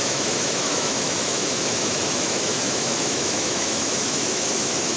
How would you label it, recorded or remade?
remade